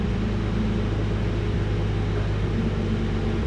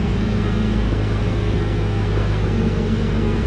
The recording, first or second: first